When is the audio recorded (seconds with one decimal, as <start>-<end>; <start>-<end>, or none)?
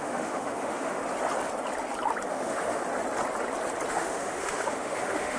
1.0-2.3; 2.8-3.9